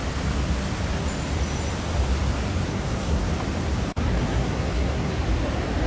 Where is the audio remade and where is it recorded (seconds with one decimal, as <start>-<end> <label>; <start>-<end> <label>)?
0.0-2.7 recorded; 2.7-3.3 remade; 3.3-4.1 recorded; 4.1-5.1 remade; 5.1-5.9 recorded